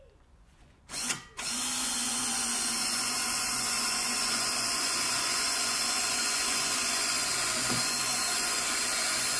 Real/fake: fake